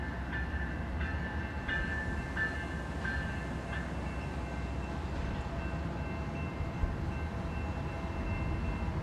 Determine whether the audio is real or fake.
real